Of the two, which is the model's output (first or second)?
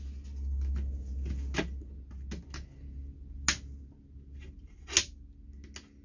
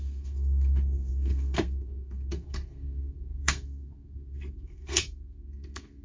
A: second